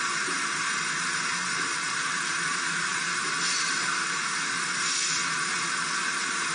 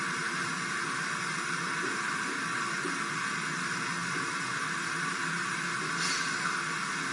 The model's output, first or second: first